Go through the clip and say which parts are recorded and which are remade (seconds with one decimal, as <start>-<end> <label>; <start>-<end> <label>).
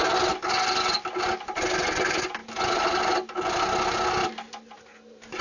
0.0-5.4 recorded